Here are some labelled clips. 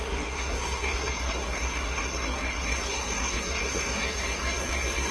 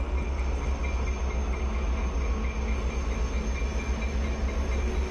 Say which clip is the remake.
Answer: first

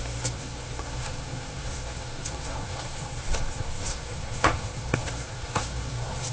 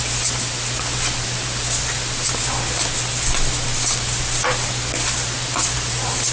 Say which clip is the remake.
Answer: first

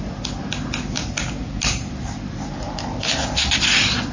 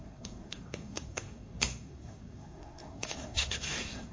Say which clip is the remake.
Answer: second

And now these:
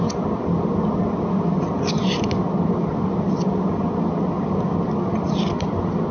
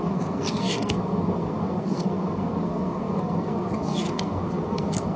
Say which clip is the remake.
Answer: second